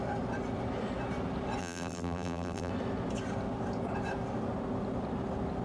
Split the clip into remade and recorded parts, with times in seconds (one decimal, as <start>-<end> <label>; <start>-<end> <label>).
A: 0.0-1.6 recorded; 1.6-2.7 remade; 2.7-5.6 recorded